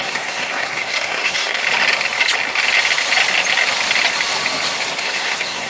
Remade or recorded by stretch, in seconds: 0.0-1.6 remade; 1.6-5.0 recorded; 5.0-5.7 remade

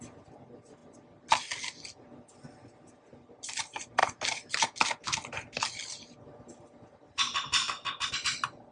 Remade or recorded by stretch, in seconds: 0.0-8.7 recorded

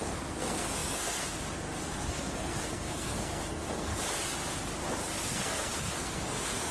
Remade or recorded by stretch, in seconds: 0.0-3.9 remade; 3.9-5.3 recorded; 5.3-6.7 remade